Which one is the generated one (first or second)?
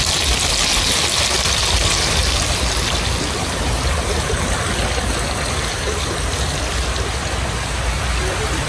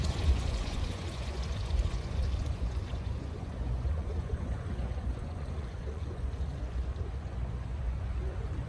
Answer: second